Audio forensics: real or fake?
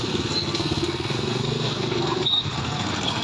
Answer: fake